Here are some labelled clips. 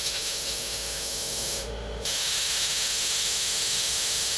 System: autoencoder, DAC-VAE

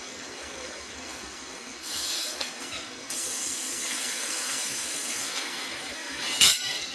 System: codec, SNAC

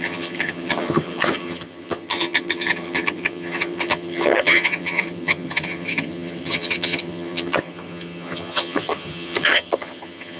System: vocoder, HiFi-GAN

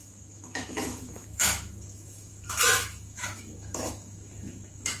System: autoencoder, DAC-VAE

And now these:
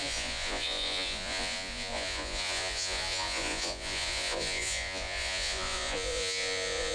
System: vocoder, Vocos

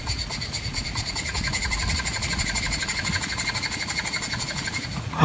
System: vocoder, Vocos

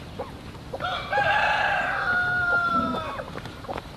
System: none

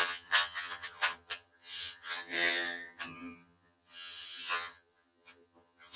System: vocoder, HiFi-GAN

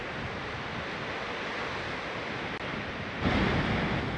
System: none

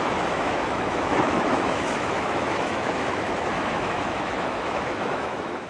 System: autoencoder, DAC-VAE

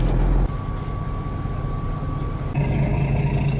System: none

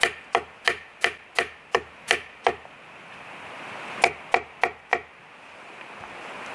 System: none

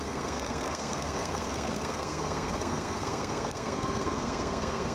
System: codec, SNAC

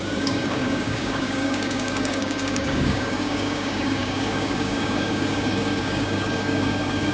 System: codec, DAC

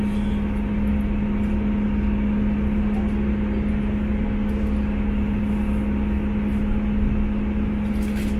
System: none